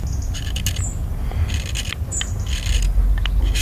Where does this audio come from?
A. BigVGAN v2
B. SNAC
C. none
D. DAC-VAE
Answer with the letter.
C